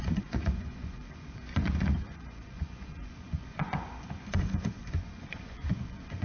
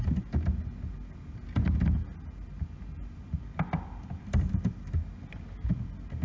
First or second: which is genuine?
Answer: second